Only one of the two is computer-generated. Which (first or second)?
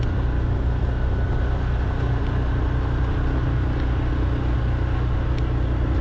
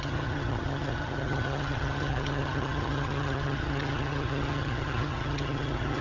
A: second